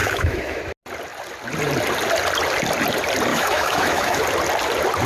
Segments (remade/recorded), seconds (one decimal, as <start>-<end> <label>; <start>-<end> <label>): 0.0-0.6 remade; 0.6-3.3 recorded; 3.3-4.2 remade; 4.2-5.1 recorded